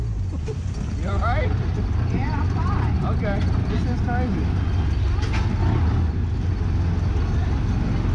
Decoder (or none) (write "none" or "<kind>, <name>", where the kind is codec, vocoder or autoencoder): none